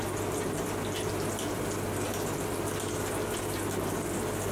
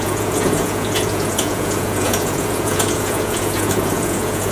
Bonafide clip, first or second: first